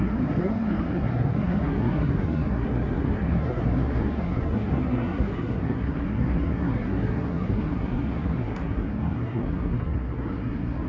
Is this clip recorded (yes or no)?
no